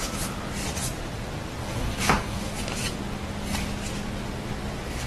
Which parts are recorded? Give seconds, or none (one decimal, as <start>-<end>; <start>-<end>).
0.0-1.6; 2.5-5.1